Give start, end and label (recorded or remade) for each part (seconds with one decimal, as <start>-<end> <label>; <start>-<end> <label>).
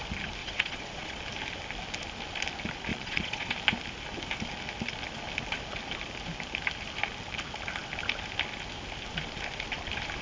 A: 0.0-0.4 recorded; 0.4-1.2 remade; 1.2-2.9 recorded; 2.9-3.5 remade; 3.5-10.2 recorded